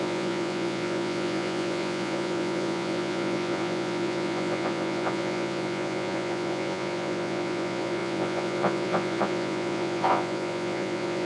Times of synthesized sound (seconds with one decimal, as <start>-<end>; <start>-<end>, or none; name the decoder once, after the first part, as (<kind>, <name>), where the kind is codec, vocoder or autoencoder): 0.0-11.3 (vocoder, Vocos)